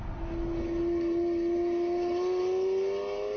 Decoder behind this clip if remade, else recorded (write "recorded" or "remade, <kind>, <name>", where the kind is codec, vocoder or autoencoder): recorded